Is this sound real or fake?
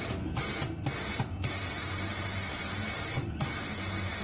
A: real